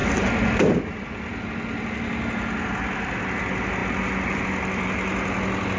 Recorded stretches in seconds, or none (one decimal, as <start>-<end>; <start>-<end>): 0.0-5.8